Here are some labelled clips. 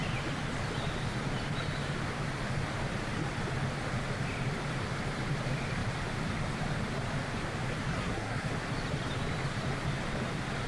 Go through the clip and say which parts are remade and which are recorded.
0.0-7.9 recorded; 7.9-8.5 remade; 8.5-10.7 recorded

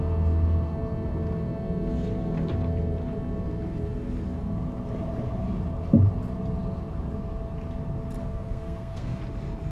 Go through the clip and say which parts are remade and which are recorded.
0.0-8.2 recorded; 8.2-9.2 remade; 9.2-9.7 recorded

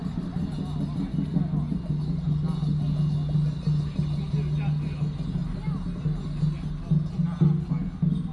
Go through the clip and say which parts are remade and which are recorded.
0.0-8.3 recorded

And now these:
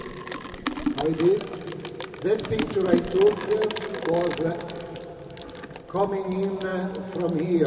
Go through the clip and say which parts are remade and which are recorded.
0.0-7.7 recorded

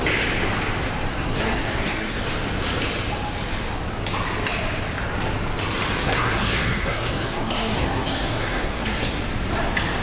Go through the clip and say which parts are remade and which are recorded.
0.0-1.1 recorded; 1.1-2.2 remade; 2.2-6.0 recorded; 6.0-9.2 remade; 9.2-10.0 recorded

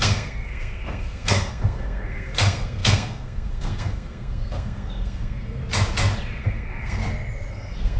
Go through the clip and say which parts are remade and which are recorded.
0.0-5.6 remade; 5.6-6.4 recorded; 6.4-7.0 remade; 7.0-7.5 recorded; 7.5-8.0 remade